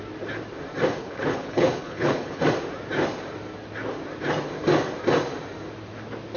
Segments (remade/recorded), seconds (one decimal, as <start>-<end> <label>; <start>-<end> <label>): 0.0-1.0 recorded; 1.0-2.4 remade; 2.4-6.4 recorded